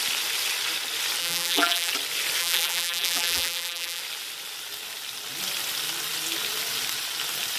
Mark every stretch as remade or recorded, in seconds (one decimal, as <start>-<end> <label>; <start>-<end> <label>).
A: 0.0-1.2 recorded; 1.2-1.9 remade; 1.9-2.4 recorded; 2.4-4.0 remade; 4.0-7.6 recorded